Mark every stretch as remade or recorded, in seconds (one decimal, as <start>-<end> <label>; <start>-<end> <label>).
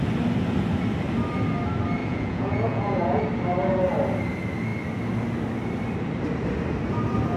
0.0-2.0 recorded; 2.0-3.2 remade; 3.2-7.4 recorded